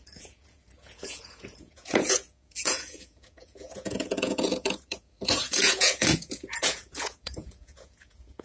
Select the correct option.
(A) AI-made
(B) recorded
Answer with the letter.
A